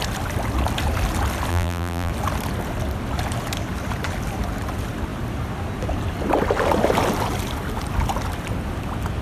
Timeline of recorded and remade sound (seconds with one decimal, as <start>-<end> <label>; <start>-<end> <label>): 0.0-1.5 recorded; 1.5-2.1 remade; 2.1-9.2 recorded